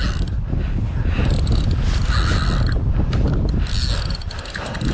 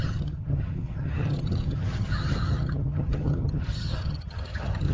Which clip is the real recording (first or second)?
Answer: first